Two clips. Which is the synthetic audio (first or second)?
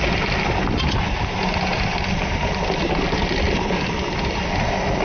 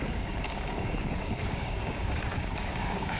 second